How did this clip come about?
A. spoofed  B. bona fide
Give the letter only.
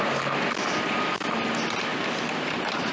B